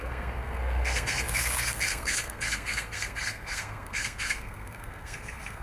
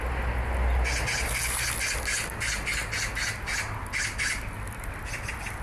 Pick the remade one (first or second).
first